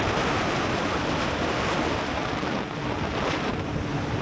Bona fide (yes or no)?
yes